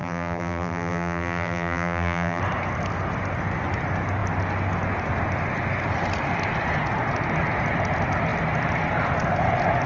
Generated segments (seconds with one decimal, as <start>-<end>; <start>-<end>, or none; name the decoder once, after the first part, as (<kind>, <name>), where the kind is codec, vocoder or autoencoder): 0.0-2.4 (vocoder, BigVGAN v2)